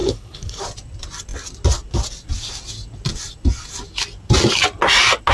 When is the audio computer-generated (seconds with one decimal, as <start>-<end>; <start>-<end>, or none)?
0.0-0.6